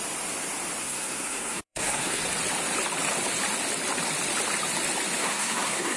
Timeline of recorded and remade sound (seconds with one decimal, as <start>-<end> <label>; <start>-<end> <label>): 0.0-0.8 recorded; 0.8-2.2 remade; 2.2-5.2 recorded; 5.2-6.0 remade